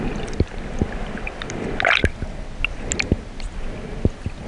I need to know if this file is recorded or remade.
recorded